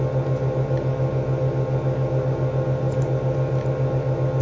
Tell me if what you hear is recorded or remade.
recorded